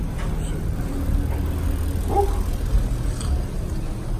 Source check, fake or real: real